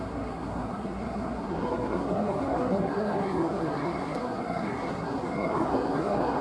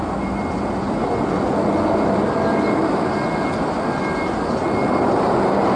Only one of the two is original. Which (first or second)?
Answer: second